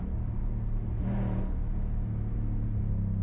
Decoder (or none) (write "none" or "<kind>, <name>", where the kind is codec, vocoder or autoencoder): none